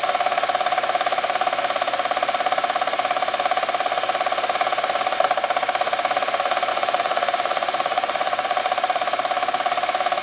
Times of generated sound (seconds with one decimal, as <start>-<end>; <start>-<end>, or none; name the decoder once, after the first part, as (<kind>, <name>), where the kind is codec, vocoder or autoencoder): 6.7-8.6 (vocoder, Vocos)